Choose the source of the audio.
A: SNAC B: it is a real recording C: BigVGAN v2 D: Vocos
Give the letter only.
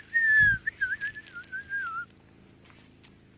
B